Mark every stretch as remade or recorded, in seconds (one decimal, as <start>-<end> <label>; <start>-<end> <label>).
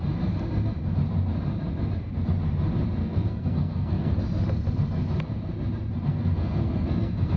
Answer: 0.0-3.0 recorded; 3.0-4.2 remade; 4.2-6.1 recorded; 6.1-7.4 remade